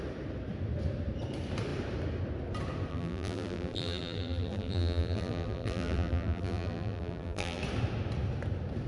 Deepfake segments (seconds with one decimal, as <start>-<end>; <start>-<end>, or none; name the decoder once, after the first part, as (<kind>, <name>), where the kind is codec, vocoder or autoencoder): 2.9-7.6 (vocoder, BigVGAN v2)